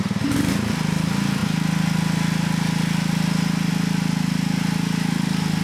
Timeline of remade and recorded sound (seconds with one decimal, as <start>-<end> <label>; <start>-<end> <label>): 0.0-5.6 recorded